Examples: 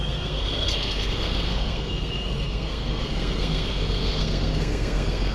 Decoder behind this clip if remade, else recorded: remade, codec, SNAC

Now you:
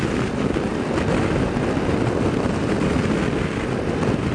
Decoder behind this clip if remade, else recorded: recorded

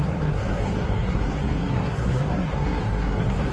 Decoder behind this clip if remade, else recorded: remade, codec, SNAC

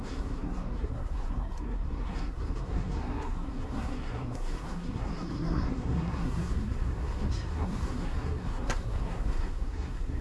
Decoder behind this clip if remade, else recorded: remade, codec, SNAC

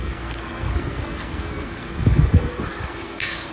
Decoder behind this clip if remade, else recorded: remade, codec, SNAC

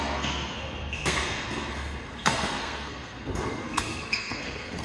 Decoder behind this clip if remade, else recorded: remade, codec, SNAC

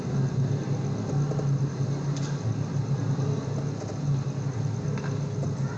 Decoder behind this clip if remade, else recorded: recorded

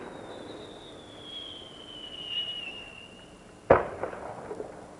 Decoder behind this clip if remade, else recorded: recorded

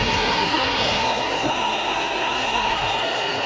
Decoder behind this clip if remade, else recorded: remade, codec, SNAC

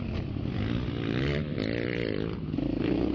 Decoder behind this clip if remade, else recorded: recorded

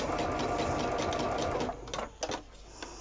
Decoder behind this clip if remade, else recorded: recorded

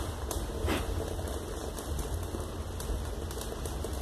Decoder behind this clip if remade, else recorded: recorded